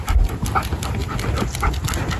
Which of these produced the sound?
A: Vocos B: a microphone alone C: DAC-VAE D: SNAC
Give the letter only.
B